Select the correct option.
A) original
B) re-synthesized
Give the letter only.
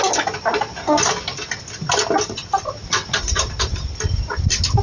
A